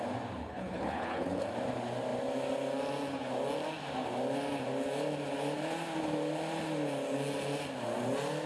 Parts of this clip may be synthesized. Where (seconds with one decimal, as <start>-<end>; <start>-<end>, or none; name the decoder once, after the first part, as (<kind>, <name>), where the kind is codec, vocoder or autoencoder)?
0.4-1.4 (codec, HILCodec)